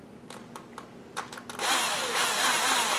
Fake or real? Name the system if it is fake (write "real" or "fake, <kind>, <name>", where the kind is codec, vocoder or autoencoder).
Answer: real